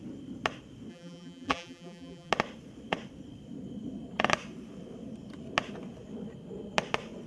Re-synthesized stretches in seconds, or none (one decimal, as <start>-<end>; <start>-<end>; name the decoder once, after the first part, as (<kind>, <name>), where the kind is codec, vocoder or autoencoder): 0.9-2.3 (vocoder, BigVGAN v2)